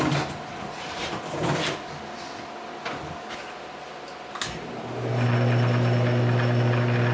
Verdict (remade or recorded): recorded